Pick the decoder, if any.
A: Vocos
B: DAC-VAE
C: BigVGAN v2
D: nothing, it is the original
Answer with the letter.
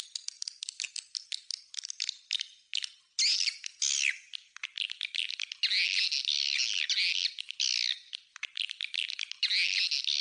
D